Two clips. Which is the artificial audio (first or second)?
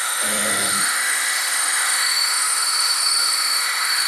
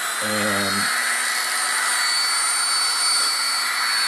first